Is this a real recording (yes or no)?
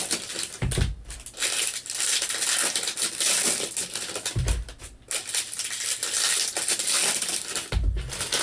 yes